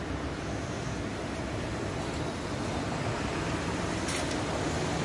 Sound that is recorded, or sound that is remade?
recorded